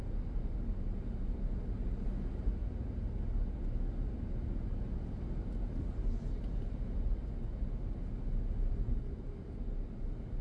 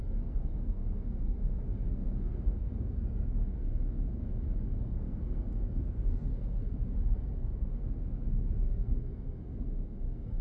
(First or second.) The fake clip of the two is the second